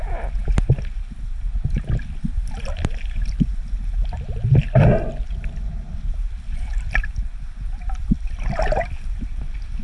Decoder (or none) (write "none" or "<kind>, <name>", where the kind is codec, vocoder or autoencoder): none